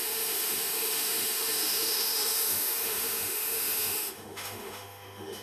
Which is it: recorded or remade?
remade